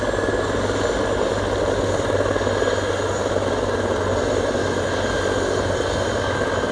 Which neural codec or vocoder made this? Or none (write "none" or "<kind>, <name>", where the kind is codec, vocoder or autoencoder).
none